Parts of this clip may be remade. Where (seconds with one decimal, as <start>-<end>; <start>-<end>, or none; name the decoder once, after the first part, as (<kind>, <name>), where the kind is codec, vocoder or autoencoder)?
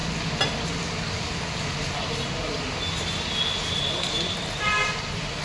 none